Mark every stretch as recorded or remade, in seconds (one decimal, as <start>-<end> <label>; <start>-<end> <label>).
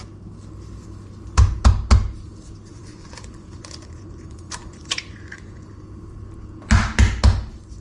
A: 0.0-2.7 recorded; 2.7-5.7 remade; 5.7-7.8 recorded